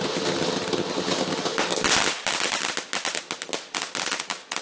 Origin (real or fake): real